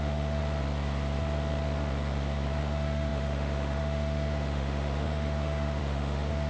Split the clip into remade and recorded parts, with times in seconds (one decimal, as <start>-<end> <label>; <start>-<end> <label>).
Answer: 0.0-0.4 remade; 0.4-2.6 recorded; 2.6-6.5 remade